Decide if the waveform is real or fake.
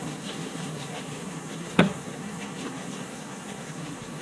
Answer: fake